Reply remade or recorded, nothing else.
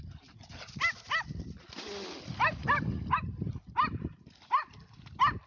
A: recorded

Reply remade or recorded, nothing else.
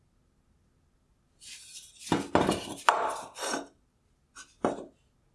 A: recorded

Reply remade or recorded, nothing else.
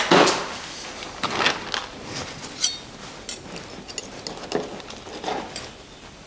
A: recorded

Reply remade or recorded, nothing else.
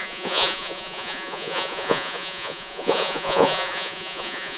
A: remade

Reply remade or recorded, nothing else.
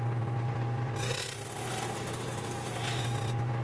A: recorded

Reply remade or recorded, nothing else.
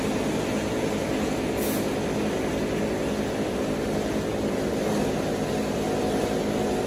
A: recorded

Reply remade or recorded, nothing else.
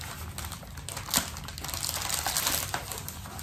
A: recorded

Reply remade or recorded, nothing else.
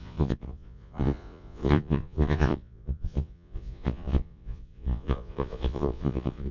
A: remade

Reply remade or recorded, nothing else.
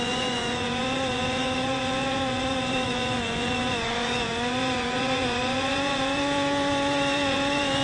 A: remade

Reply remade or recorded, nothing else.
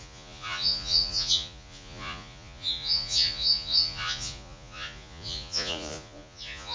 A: remade